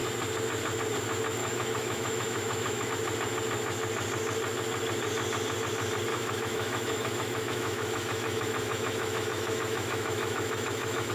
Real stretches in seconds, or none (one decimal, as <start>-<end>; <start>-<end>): 0.0-1.4; 2.9-6.1